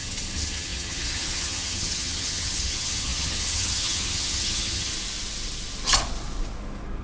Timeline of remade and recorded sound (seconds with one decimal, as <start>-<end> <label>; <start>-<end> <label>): 0.0-4.9 remade; 4.9-7.0 recorded